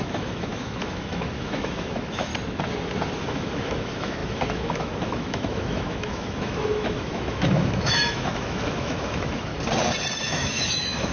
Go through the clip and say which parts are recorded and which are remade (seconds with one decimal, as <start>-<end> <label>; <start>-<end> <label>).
0.0-2.3 remade; 2.3-3.2 recorded; 3.2-9.5 remade; 9.5-10.3 recorded; 10.3-11.1 remade